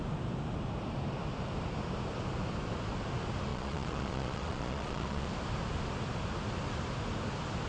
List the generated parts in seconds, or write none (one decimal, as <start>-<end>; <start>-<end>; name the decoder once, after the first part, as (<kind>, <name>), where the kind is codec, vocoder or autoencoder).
3.5-5.3 (vocoder, Vocos)